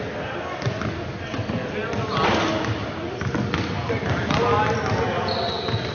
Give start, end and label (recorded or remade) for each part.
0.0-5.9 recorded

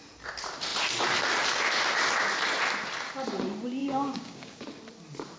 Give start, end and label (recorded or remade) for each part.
0.0-3.8 recorded; 3.8-4.6 remade; 4.6-5.4 recorded

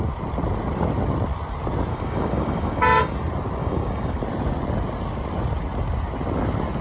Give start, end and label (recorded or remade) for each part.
0.0-1.9 recorded; 1.9-3.1 remade; 3.1-3.6 recorded; 3.6-4.2 remade; 4.2-6.8 recorded

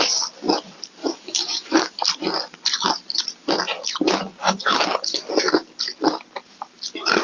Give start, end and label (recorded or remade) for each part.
0.0-1.0 recorded; 1.0-2.0 remade; 2.0-4.4 recorded; 4.4-5.3 remade; 5.3-7.2 recorded